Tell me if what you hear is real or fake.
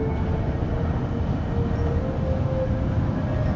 real